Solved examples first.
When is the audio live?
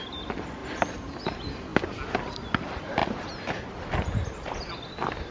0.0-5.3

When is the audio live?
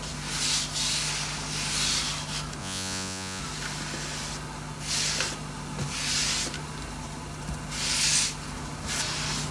0.0-2.6; 3.4-9.5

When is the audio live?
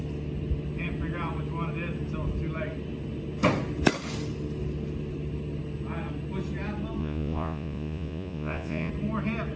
0.0-7.0; 8.9-9.6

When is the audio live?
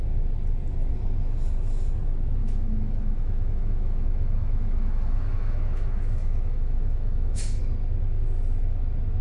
0.0-2.4; 7.6-9.2